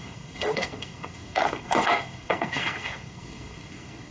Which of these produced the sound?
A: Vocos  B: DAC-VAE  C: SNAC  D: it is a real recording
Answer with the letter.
C